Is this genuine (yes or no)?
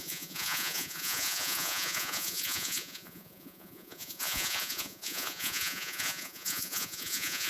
no